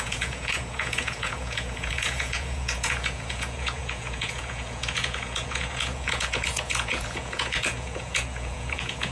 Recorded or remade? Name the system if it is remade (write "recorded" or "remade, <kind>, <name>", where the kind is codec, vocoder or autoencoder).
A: remade, vocoder, Vocos